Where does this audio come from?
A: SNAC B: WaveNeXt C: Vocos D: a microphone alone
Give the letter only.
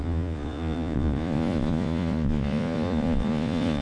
C